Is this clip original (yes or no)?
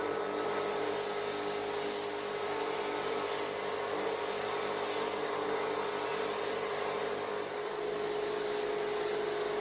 yes